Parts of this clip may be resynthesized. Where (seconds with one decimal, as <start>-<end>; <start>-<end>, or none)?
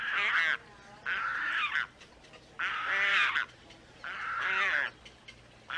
1.3-2.0; 3.1-4.0